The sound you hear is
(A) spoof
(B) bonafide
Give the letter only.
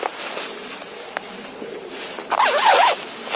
B